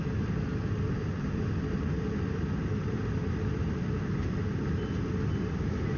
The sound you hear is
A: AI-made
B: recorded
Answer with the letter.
B